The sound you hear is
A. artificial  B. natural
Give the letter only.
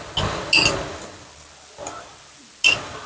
B